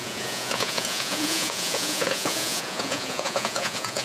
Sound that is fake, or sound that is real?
fake